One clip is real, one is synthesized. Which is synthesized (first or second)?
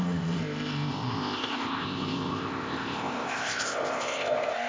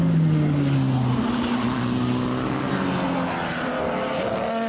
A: first